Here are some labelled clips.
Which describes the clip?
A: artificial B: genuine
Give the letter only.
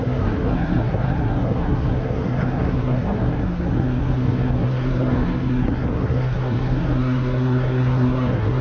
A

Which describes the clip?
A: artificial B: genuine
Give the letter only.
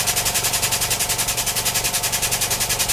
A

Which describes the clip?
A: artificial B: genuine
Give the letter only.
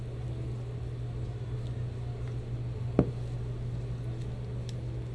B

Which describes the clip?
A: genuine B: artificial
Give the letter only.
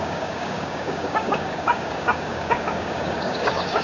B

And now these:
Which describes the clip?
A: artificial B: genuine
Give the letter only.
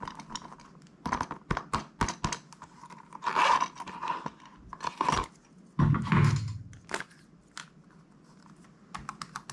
B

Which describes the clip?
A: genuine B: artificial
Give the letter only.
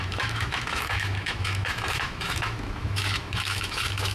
B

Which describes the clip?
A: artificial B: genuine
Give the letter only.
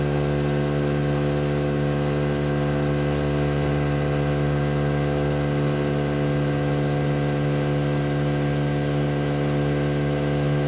B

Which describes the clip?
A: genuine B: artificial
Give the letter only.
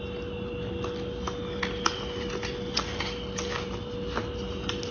A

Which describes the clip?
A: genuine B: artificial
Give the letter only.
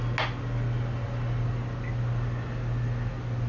A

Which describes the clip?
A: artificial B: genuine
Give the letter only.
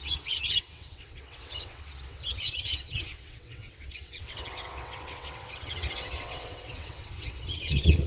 A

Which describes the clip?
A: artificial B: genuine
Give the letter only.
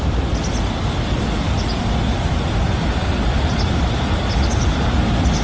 B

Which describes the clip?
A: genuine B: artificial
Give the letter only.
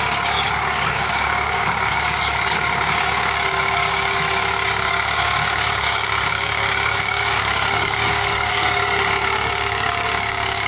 B